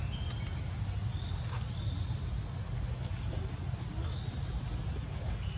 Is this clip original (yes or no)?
yes